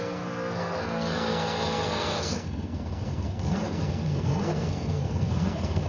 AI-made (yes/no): yes